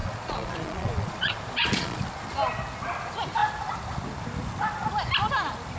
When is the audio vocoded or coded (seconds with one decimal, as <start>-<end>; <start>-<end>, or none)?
0.0-2.0